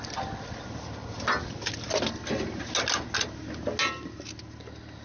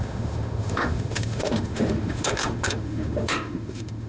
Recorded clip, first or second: first